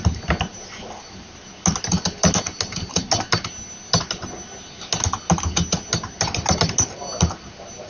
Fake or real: real